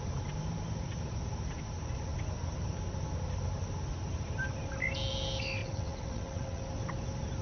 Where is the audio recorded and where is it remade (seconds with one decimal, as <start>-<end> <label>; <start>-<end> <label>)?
0.0-5.6 recorded; 5.6-6.6 remade; 6.6-7.4 recorded